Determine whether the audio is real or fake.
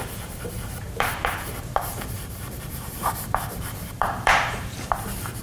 fake